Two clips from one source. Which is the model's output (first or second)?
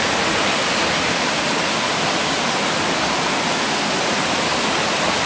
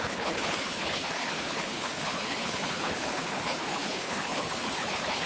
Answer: second